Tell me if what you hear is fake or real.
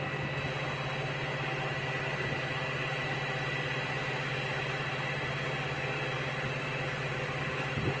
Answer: real